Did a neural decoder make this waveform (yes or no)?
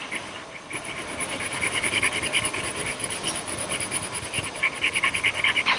no